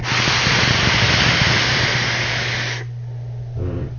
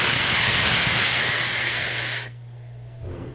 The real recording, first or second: first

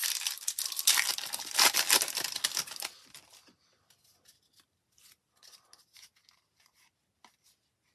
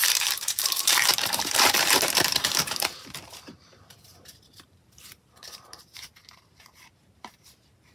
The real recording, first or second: first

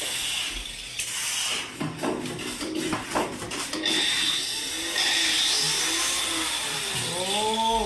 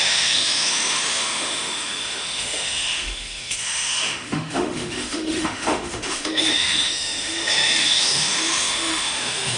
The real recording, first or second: first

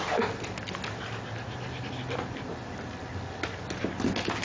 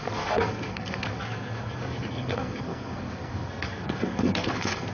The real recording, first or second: first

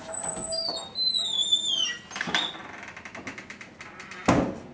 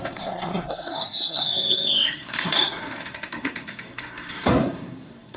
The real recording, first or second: first